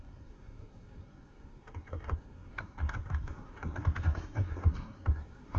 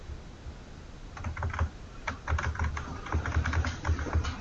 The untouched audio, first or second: second